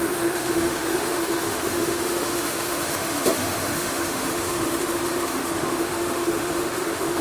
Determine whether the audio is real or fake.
fake